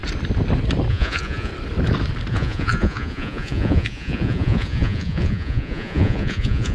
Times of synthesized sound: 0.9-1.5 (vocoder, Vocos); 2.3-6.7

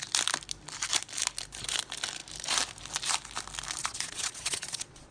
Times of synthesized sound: 3.8-5.1 (vocoder, Vocos)

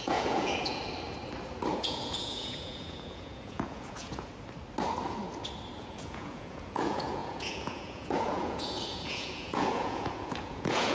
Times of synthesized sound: 0.0-0.8 (vocoder, Vocos); 1.7-4.3; 5.8-10.9

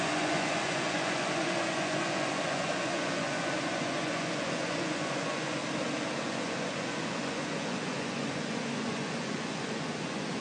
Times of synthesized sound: 0.0-5.6 (vocoder, Vocos); 6.2-10.4

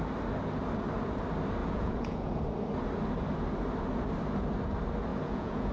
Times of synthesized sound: 1.6-2.4 (vocoder, Vocos); 5.1-5.7

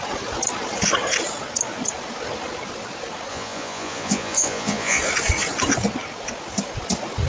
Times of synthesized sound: 3.3-5.0 (vocoder, Vocos)